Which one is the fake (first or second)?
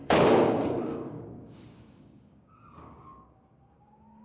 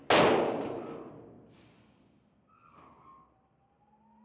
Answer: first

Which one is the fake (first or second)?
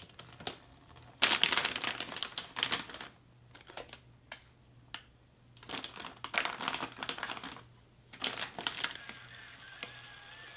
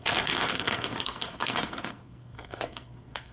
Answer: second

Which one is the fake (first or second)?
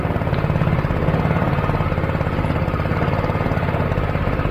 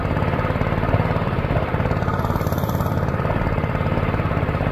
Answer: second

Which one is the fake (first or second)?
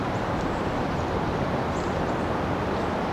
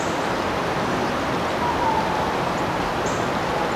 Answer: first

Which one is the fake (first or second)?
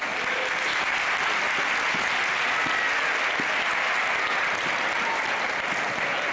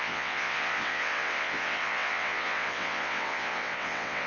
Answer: second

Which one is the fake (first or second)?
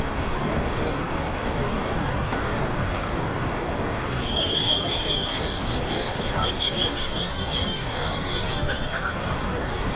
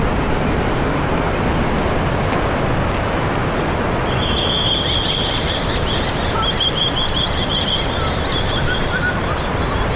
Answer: first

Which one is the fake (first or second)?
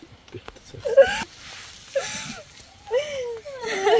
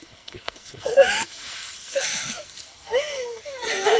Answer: second